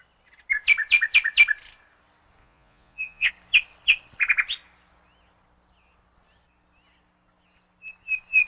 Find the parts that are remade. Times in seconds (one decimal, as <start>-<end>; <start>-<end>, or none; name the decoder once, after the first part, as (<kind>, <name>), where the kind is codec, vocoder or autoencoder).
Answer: 2.4-3.3 (vocoder, Vocos)